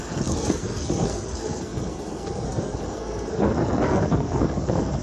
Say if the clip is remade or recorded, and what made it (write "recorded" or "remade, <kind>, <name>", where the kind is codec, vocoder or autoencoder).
remade, codec, SNAC